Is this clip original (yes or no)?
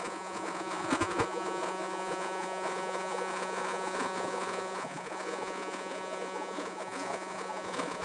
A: no